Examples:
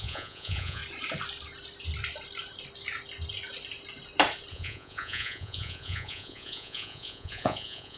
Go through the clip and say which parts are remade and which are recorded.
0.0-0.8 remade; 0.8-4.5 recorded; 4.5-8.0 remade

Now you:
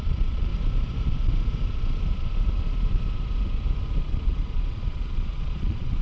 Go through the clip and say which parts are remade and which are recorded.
0.0-0.5 remade; 0.5-4.0 recorded; 4.0-6.0 remade